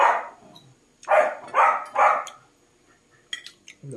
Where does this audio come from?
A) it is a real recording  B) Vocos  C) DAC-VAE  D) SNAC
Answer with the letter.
A